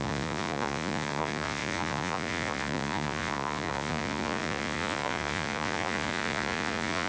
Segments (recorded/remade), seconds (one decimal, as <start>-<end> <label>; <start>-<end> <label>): 0.0-7.1 remade